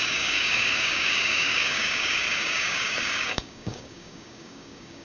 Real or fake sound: fake